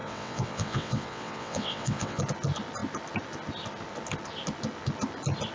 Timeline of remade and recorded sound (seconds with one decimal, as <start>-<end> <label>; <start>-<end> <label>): 0.0-2.2 remade; 2.2-5.5 recorded